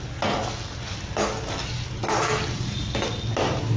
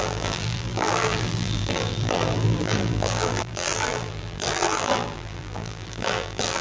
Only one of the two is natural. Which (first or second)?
first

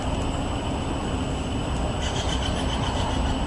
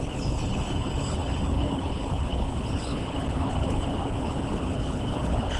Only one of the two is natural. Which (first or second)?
first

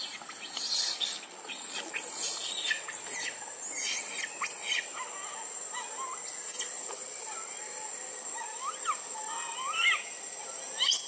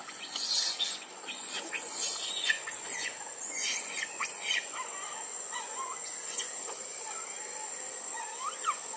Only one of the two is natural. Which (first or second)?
first